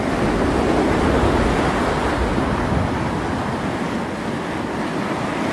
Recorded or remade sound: recorded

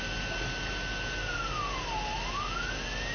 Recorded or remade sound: recorded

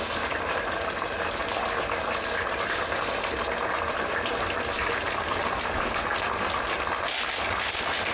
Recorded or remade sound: recorded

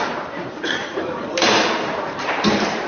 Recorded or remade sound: remade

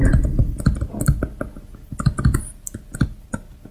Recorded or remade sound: recorded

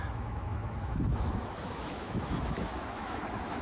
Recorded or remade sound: remade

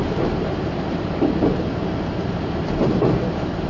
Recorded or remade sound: remade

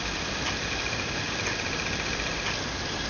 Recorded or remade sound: recorded